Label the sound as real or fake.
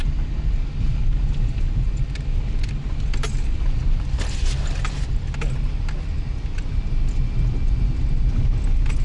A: real